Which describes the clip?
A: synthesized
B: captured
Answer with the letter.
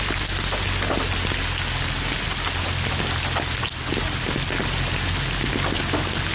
B